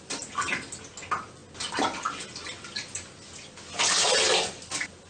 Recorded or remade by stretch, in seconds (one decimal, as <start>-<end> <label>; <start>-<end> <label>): 0.0-5.1 recorded